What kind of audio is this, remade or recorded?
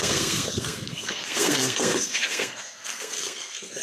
remade